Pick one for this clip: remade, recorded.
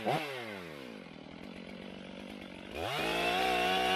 recorded